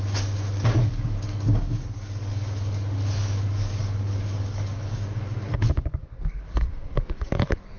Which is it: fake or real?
fake